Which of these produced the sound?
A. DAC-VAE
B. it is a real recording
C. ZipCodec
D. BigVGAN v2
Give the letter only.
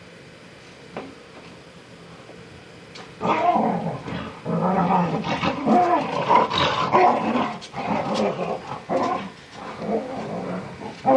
B